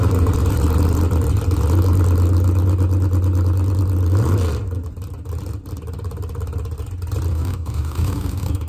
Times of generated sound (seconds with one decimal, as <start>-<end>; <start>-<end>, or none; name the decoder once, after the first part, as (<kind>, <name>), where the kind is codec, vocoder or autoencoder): 7.3-8.7 (codec, DAC)